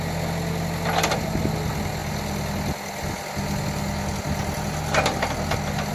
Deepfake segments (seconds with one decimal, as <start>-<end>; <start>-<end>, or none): none